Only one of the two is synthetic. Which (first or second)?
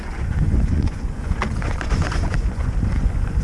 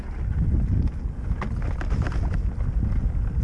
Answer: first